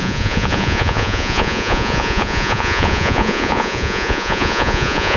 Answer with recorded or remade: remade